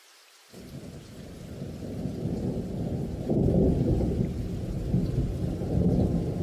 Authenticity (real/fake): real